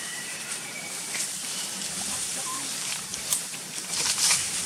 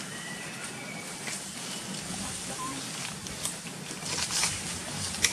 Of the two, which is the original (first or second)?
second